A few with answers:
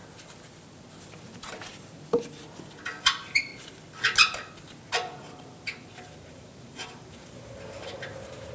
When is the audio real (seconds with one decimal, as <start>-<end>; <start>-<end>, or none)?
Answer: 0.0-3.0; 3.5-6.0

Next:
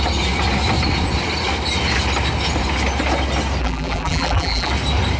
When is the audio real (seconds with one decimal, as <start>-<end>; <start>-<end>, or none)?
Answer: 0.0-3.6; 4.7-5.2

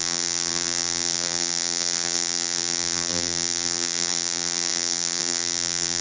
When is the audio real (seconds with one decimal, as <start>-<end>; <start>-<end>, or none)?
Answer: none